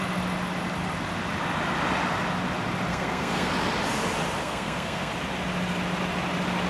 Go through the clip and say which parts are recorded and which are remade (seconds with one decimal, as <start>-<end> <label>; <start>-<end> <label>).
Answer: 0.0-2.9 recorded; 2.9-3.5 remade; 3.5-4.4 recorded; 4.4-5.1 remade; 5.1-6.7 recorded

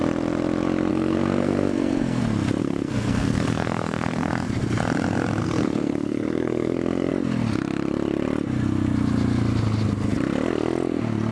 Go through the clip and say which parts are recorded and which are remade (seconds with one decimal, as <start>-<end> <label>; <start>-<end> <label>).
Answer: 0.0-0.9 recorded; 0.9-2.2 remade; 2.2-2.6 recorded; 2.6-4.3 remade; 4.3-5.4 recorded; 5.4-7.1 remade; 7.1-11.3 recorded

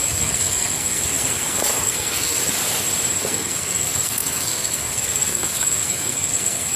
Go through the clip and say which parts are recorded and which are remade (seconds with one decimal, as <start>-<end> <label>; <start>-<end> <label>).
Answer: 0.0-2.4 remade; 2.4-3.2 recorded; 3.2-6.8 remade

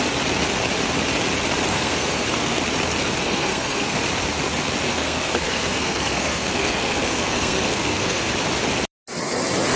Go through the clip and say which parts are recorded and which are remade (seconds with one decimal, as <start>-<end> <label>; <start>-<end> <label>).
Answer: 0.0-1.7 recorded; 1.7-2.6 remade; 2.6-3.2 recorded; 3.2-4.0 remade; 4.0-4.9 recorded; 4.9-8.3 remade; 8.3-9.8 recorded

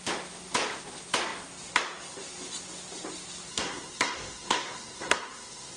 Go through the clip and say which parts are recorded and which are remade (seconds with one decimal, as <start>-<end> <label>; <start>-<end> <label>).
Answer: 0.0-3.5 recorded; 3.5-5.8 remade

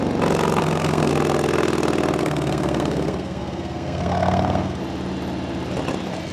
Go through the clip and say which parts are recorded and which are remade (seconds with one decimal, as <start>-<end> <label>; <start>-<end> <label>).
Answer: 0.0-0.6 recorded; 0.6-1.1 remade; 1.1-2.2 recorded; 2.2-4.8 remade; 4.8-6.3 recorded

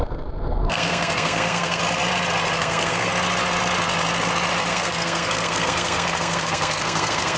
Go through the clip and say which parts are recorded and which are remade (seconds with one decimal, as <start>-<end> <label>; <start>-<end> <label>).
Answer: 0.0-1.8 remade; 1.8-2.6 recorded; 2.6-3.1 remade; 3.1-4.7 recorded; 4.7-7.4 remade

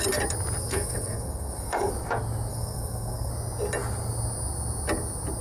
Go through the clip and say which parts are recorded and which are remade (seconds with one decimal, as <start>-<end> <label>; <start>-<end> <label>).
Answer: 0.0-0.6 recorded; 0.6-1.9 remade; 1.9-2.5 recorded; 2.5-3.3 remade; 3.3-5.4 recorded